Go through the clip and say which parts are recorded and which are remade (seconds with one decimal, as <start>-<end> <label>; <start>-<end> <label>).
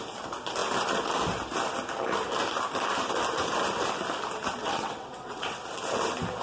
0.0-4.6 recorded; 4.6-5.6 remade; 5.6-6.4 recorded